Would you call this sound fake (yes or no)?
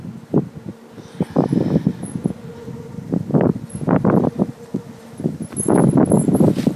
no